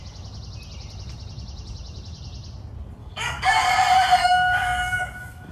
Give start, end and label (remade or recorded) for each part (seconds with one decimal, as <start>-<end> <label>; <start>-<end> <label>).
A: 0.0-3.0 recorded; 3.0-3.7 remade; 3.7-4.2 recorded; 4.2-5.5 remade